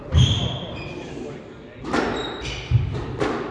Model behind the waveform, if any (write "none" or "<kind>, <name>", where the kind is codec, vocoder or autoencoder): none